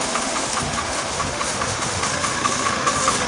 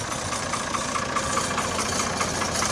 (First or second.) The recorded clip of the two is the second